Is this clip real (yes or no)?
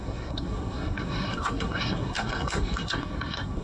no